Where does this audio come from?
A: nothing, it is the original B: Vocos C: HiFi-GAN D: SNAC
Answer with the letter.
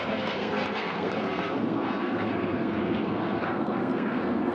D